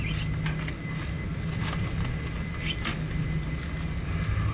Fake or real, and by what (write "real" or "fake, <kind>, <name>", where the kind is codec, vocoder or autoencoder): real